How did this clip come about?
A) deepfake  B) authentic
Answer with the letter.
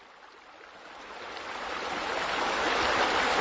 B